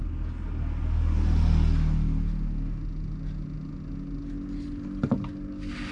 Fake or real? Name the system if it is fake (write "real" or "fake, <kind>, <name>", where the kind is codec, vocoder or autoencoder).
real